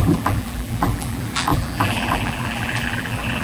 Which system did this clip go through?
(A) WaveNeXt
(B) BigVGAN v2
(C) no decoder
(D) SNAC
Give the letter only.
B